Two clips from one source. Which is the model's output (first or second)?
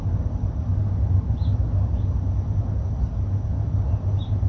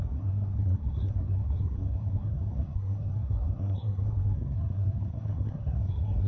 second